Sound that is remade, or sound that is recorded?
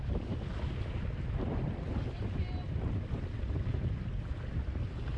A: recorded